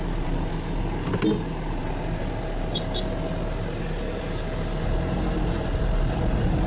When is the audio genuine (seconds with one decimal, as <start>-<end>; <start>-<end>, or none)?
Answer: 0.0-6.7